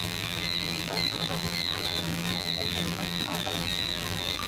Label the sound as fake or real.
fake